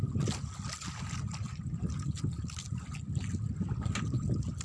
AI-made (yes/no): no